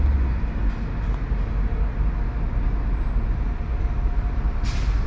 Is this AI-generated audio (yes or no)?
no